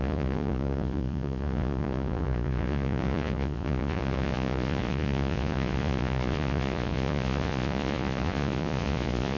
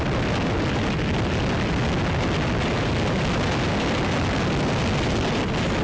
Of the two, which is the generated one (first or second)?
first